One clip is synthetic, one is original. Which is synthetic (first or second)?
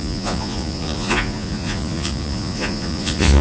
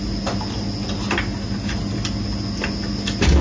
first